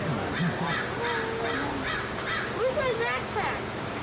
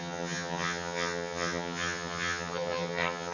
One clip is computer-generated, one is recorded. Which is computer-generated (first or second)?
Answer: second